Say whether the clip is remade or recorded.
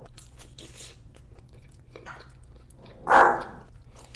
remade